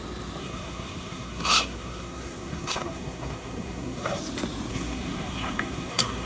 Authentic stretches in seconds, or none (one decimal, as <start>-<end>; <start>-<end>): 0.0-0.4; 4.2-4.7